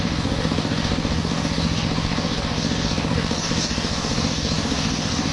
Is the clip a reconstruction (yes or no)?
yes